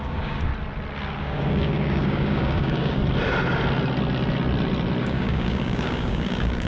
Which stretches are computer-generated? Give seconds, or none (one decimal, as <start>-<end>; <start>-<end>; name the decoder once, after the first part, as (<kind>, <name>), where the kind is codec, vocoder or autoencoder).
0.0-0.5 (codec, DAC); 1.2-3.0; 5.0-6.7

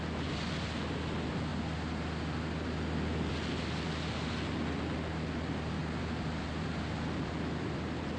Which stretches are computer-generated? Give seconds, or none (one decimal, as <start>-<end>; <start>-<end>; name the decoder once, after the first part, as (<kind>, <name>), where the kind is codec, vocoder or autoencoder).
none

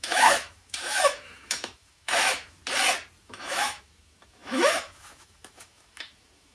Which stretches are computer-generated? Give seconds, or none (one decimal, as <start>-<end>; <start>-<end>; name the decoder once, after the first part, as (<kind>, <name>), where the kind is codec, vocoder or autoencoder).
0.0-2.6 (autoencoder, DAC-VAE); 3.2-6.5

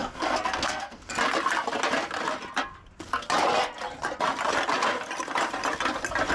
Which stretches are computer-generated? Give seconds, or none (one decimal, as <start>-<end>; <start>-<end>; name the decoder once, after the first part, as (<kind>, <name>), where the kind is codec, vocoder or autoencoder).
0.0-1.1 (codec, SNAC)

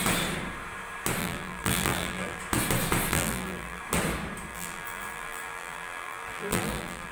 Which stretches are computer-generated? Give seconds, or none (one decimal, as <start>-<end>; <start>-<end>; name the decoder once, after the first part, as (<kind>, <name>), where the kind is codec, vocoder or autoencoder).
1.2-2.4 (vocoder, BigVGAN v2); 3.1-3.8; 4.5-7.1

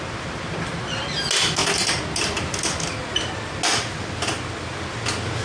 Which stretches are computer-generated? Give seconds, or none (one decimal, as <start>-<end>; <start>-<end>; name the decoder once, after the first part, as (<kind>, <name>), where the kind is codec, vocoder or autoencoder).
none

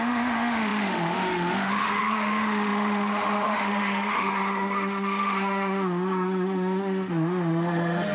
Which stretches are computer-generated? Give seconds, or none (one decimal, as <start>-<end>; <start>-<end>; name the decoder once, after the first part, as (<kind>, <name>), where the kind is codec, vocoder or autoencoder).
0.0-8.1 (autoencoder, DAC-VAE)